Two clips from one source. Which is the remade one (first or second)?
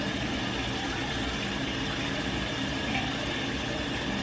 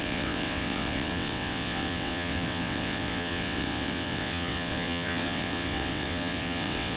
second